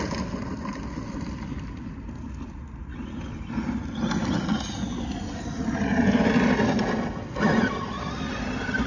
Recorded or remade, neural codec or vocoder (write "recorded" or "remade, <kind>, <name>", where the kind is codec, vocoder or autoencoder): recorded